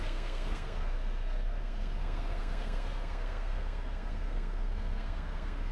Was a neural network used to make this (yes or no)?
yes